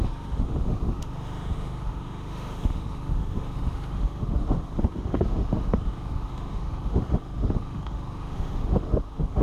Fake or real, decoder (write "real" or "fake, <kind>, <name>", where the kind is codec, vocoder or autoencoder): fake, autoencoder, DAC-VAE